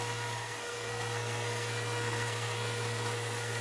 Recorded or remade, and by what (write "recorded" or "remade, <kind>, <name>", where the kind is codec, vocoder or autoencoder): remade, codec, SNAC